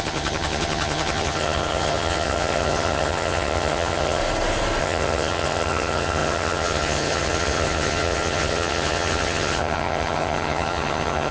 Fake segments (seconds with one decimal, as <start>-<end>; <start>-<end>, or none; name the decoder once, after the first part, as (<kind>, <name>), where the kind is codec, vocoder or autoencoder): 0.0-4.2 (vocoder, HiFi-GAN); 4.8-11.3